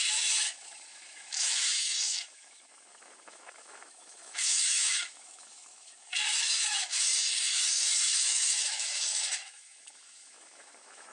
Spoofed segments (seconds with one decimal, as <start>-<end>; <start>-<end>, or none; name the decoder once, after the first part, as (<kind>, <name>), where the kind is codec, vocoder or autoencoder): 0.0-11.1 (autoencoder, DAC-VAE)